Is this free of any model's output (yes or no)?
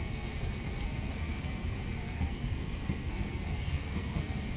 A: no